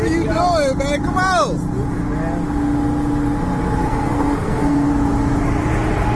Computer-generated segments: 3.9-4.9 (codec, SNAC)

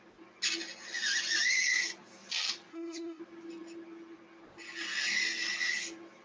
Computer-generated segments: 2.7-3.2 (codec, SNAC)

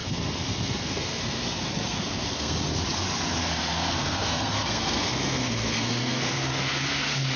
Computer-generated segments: 0.0-2.7 (codec, SNAC); 3.4-7.4

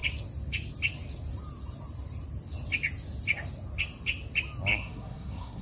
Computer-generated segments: 4.7-5.6 (codec, SNAC)

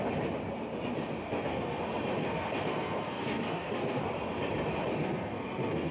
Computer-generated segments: 1.2-1.8 (codec, SNAC); 2.2-4.0; 5.0-5.9